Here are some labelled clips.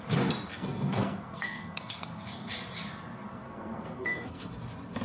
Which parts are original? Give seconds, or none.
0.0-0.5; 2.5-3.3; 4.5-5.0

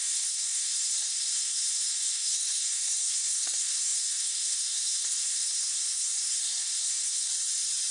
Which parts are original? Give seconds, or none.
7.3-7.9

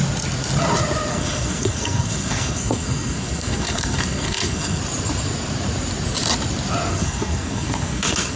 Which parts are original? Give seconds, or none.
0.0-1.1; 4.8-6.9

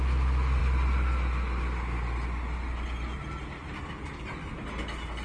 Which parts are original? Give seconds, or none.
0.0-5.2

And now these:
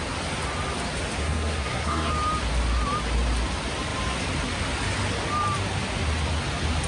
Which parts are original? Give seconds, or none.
0.0-1.2; 2.1-6.9